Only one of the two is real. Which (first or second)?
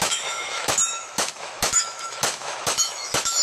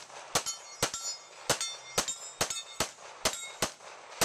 second